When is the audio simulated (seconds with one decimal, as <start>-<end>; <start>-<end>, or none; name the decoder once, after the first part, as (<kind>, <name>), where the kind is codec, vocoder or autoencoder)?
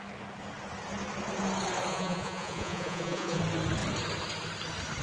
1.9-3.4 (vocoder, Vocos)